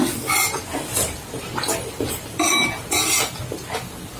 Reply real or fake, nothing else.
real